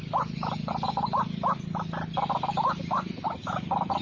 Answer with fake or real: real